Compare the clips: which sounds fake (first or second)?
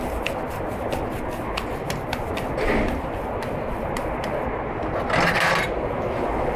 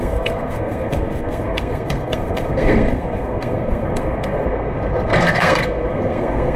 second